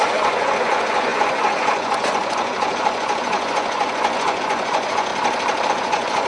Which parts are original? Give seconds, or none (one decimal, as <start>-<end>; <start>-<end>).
5.1-5.7